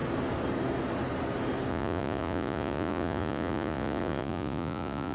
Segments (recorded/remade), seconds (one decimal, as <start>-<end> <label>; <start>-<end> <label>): 0.0-1.7 recorded; 1.7-5.1 remade